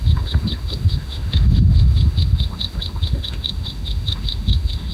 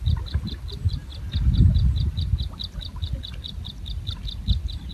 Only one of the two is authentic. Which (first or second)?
second